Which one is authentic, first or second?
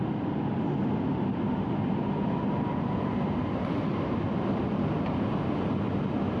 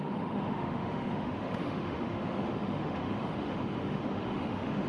first